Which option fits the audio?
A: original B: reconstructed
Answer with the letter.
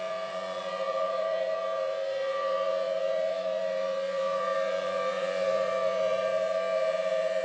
B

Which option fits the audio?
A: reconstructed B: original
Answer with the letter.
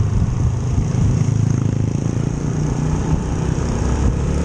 B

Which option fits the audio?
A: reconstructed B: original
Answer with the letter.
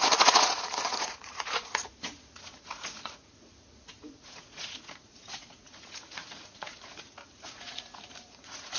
A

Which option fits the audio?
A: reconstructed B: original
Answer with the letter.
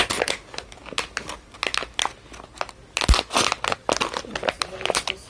B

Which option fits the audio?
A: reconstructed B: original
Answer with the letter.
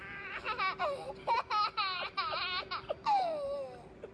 B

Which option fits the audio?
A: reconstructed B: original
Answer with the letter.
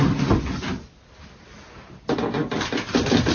B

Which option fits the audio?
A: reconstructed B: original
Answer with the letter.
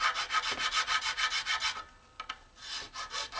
B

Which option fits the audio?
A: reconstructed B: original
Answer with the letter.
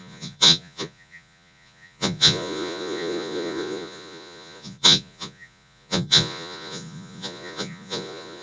A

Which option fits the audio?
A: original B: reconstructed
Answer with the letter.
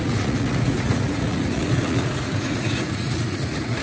B